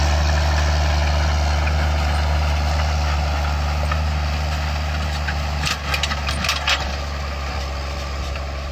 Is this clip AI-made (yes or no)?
no